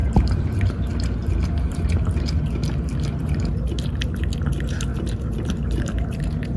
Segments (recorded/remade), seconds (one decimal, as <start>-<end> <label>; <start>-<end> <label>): 0.0-0.7 remade; 0.7-1.2 recorded; 1.2-2.5 remade; 2.5-3.2 recorded; 3.2-4.0 remade; 4.0-4.9 recorded; 4.9-6.6 remade